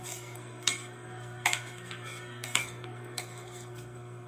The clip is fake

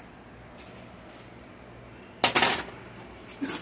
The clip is real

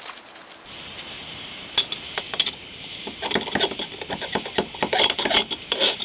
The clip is real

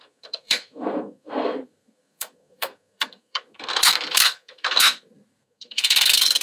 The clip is fake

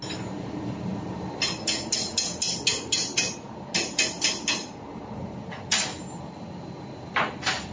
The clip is real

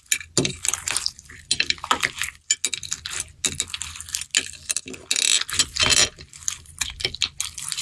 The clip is real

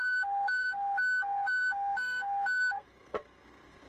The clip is fake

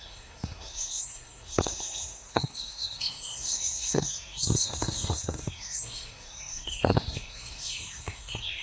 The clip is fake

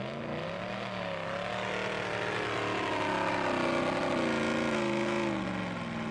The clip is real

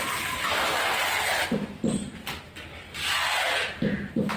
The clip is real